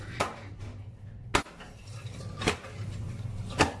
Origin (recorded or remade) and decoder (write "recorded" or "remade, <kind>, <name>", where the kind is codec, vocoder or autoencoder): recorded